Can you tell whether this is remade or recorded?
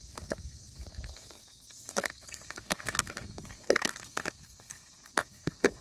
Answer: remade